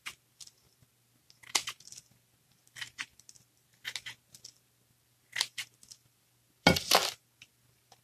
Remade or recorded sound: recorded